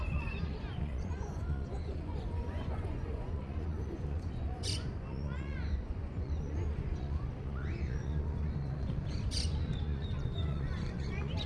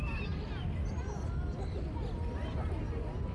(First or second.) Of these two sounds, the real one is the second